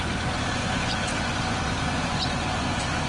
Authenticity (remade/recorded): remade